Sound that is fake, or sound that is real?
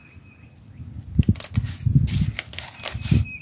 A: real